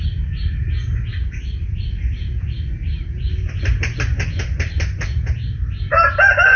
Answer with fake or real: real